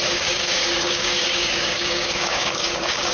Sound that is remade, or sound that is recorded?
remade